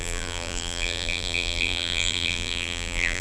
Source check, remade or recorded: remade